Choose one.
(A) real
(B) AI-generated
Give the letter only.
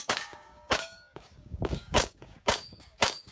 B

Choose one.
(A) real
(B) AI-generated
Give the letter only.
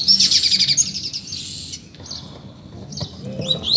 A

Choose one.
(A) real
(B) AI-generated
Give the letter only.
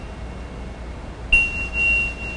A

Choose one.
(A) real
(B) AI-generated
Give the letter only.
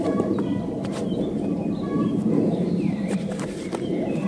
B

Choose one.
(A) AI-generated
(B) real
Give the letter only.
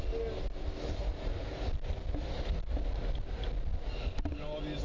B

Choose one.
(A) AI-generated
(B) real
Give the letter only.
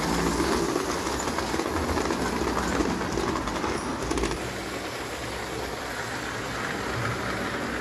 B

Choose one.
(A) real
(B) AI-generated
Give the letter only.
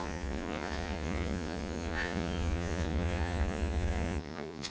B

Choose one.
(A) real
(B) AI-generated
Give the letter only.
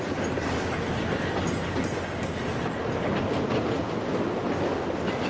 A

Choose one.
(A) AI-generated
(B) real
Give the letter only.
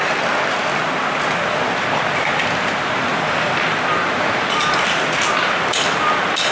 B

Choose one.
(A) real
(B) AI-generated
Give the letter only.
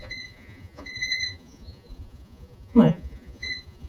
B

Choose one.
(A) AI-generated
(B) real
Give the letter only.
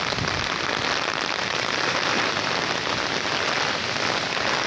B